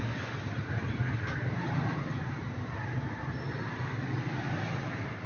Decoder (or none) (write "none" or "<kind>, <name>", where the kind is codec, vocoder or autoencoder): none